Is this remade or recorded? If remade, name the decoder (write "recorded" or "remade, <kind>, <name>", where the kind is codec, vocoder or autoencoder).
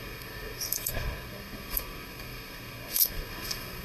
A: remade, codec, SNAC